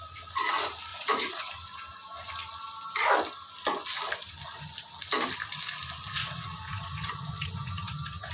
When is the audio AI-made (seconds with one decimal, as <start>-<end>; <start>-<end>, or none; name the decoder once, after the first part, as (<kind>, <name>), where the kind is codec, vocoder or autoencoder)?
0.9-1.5 (vocoder, Vocos); 6.2-8.3

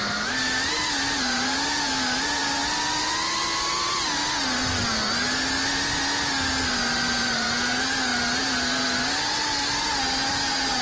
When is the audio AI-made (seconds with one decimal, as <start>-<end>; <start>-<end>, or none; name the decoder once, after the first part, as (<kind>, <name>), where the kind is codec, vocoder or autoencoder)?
none